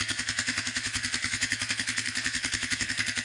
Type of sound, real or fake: fake